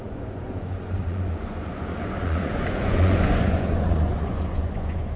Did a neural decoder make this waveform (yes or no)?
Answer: yes